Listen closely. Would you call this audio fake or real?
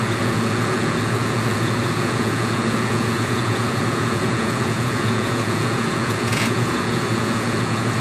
fake